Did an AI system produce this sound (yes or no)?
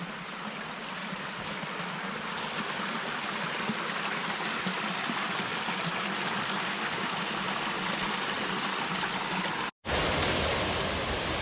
no